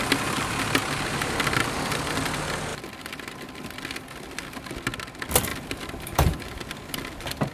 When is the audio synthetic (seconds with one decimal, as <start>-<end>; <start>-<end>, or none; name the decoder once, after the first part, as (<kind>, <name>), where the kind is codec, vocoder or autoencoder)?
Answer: 2.7-4.7 (vocoder, BigVGAN v2); 5.5-6.5